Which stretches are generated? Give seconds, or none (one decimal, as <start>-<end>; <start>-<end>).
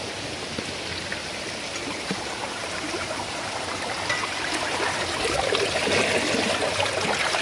2.6-6.0